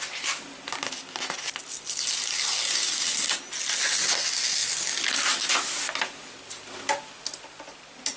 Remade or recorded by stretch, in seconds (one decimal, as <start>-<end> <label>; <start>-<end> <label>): 0.0-8.2 recorded